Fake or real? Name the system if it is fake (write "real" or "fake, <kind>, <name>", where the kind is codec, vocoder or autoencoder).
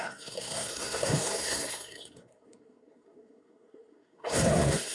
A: fake, codec, SNAC